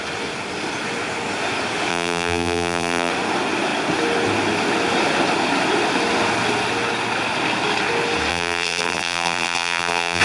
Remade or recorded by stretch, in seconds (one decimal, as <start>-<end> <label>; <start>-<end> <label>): 0.0-1.9 recorded; 1.9-3.1 remade; 3.1-8.3 recorded; 8.3-10.2 remade